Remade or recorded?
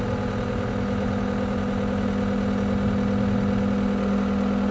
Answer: recorded